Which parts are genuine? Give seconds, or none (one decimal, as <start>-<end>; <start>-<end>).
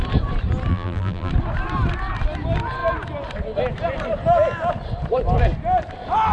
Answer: 0.0-0.7; 1.3-6.3